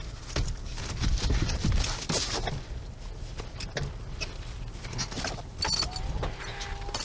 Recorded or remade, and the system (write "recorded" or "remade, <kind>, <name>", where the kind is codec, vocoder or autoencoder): recorded